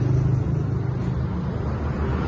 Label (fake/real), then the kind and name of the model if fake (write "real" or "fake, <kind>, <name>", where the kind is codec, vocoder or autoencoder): real